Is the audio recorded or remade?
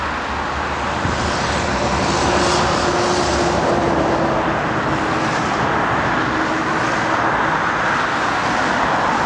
recorded